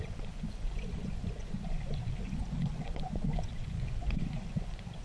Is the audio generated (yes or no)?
yes